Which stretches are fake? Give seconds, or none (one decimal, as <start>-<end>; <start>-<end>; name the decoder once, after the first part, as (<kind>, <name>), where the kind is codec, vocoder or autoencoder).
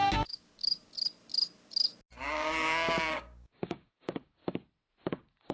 0.0-0.9 (codec, DAC); 2.2-4.4; 5.1-5.5